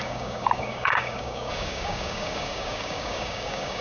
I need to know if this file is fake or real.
fake